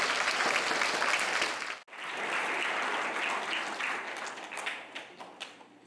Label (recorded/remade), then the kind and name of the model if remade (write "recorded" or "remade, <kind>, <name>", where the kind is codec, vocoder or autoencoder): recorded